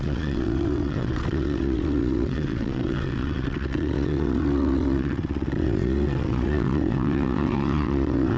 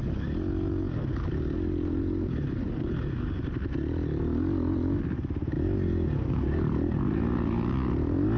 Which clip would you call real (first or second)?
second